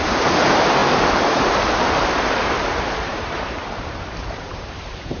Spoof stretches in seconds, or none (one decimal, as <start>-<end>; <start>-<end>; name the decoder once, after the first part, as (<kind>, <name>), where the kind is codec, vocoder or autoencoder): 3.1-5.2 (vocoder, BigVGAN v2)